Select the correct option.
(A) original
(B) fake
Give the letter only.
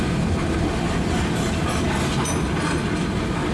A